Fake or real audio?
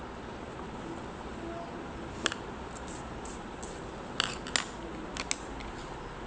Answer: real